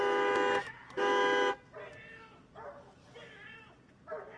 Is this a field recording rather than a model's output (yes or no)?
yes